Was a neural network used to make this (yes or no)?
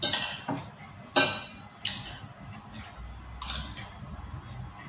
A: no